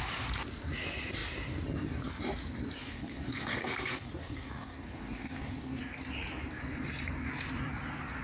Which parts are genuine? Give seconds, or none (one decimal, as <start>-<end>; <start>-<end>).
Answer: 0.0-2.8; 5.8-8.2